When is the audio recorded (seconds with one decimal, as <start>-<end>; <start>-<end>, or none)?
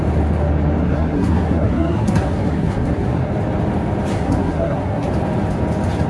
0.0-0.8; 3.3-4.1; 5.1-6.1